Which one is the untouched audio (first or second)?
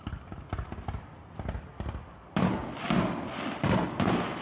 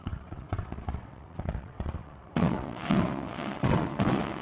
first